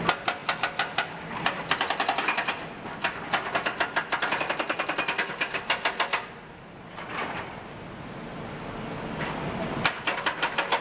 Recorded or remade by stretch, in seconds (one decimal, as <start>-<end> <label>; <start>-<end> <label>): 0.0-10.8 recorded